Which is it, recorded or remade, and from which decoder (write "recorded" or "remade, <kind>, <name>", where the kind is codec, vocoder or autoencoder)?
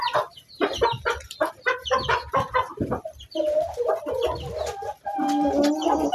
recorded